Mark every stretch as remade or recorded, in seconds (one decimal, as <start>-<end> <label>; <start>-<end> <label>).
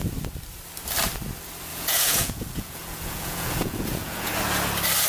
0.0-1.7 recorded; 1.7-4.3 remade; 4.3-5.1 recorded